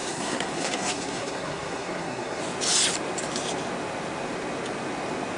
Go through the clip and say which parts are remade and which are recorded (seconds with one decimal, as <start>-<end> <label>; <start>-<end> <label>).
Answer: 0.0-2.4 remade; 2.4-5.4 recorded